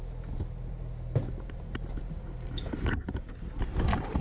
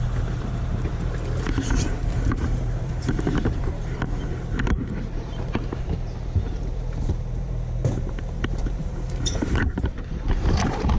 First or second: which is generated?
second